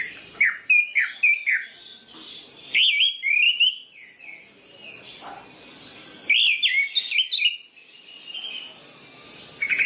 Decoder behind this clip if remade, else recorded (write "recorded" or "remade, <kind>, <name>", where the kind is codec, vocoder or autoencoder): recorded